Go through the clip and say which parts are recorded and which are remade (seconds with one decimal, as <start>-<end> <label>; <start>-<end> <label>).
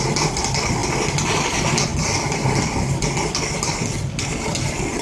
0.0-5.0 recorded